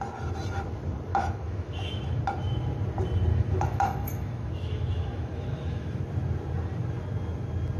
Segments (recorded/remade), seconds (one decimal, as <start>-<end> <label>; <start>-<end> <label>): 0.0-1.1 recorded; 1.1-2.2 remade; 2.2-3.3 recorded; 3.3-6.0 remade; 6.0-7.8 recorded

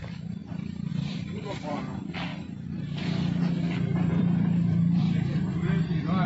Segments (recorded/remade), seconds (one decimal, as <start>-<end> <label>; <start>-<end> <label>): 0.0-0.4 remade; 0.4-0.9 recorded; 0.9-2.3 remade; 2.3-4.1 recorded; 4.1-6.3 remade

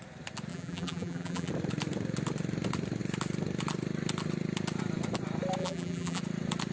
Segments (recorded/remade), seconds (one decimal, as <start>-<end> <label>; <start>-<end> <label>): 0.0-0.5 recorded; 0.5-1.5 remade; 1.5-5.6 recorded; 5.6-6.2 remade; 6.2-6.7 recorded

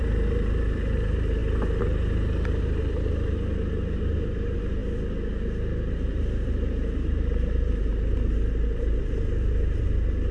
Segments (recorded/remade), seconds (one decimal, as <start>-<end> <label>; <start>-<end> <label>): 0.0-4.8 remade; 4.8-5.9 recorded; 5.9-7.9 remade; 7.9-9.0 recorded; 9.0-10.3 remade

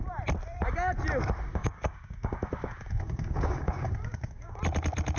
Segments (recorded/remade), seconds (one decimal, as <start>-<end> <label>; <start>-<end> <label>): 0.0-1.5 recorded; 1.5-4.6 remade; 4.6-5.2 recorded

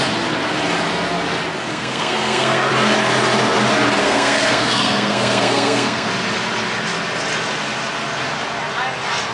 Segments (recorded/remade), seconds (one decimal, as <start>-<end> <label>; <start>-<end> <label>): 0.0-1.7 recorded; 1.7-2.7 remade; 2.7-4.0 recorded; 4.0-6.1 remade; 6.1-9.3 recorded

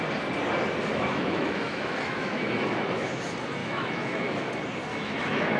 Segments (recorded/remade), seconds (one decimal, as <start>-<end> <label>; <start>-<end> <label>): 0.0-0.9 recorded; 0.9-3.1 remade; 3.1-3.6 recorded; 3.6-4.5 remade; 4.5-4.9 recorded; 4.9-5.6 remade

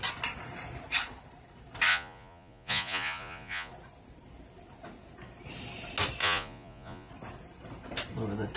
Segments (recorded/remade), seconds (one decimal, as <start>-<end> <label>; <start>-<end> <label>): 0.0-1.9 recorded; 1.9-3.7 remade; 3.7-6.2 recorded; 6.2-7.1 remade; 7.1-8.6 recorded